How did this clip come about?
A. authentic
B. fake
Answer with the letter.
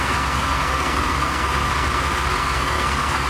B